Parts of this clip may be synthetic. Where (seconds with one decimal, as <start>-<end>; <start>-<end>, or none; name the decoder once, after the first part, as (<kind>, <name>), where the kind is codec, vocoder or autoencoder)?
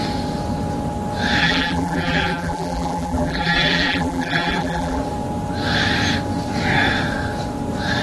1.4-5.0 (vocoder, BigVGAN v2)